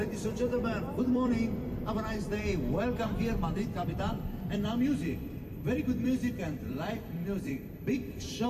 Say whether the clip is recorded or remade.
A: remade